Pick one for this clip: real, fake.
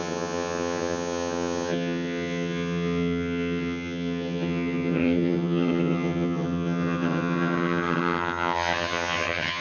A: fake